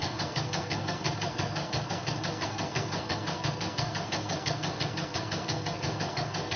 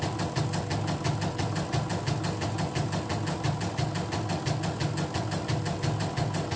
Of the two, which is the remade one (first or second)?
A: first